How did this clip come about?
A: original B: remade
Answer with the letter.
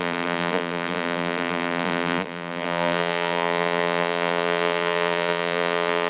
B